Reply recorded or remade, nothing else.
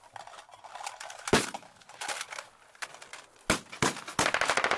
recorded